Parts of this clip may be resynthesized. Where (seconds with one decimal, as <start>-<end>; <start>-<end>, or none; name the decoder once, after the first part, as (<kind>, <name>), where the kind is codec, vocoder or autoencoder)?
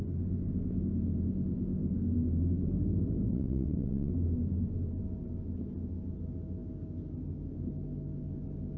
3.3-4.1 (vocoder, WaveNeXt)